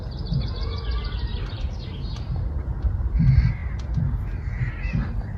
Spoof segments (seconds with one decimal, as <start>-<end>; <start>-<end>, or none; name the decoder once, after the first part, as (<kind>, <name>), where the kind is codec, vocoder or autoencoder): 1.3-3.2 (vocoder, BigVGAN v2)